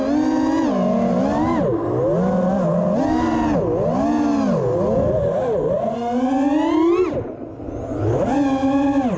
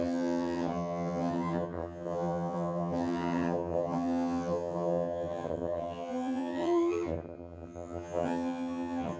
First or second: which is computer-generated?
second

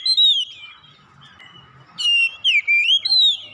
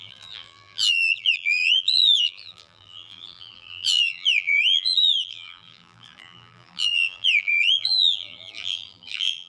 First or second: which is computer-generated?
second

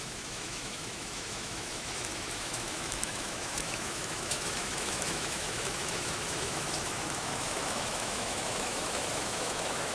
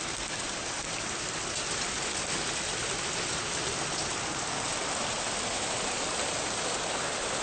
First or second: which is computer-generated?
first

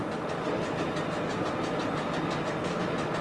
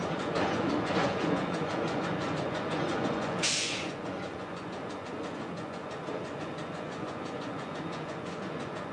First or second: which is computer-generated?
second